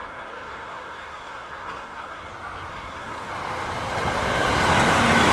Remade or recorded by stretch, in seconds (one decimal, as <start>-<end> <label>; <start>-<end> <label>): 0.0-2.3 remade; 2.3-2.7 recorded; 2.7-3.3 remade; 3.3-5.3 recorded